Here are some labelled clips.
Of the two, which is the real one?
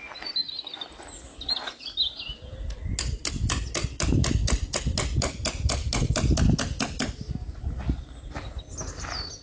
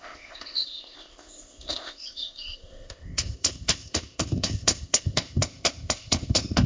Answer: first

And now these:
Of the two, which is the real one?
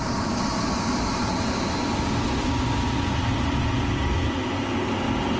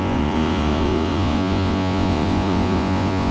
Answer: first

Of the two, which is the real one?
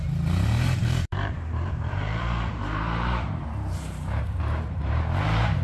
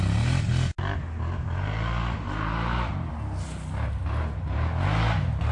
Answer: second